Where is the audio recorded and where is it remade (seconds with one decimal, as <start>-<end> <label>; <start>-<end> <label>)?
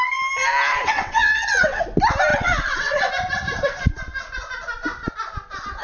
0.0-0.7 recorded; 0.7-1.8 remade; 1.8-2.3 recorded; 2.3-3.1 remade; 3.1-5.8 recorded